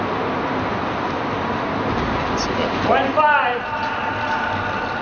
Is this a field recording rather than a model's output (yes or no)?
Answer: yes